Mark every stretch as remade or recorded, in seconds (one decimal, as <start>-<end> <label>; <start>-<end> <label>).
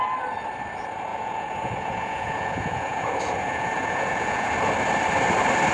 0.0-1.1 recorded; 1.1-4.5 remade; 4.5-5.7 recorded